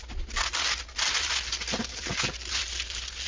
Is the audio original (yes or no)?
yes